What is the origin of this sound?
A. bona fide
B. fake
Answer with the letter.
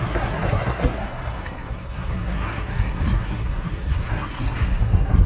B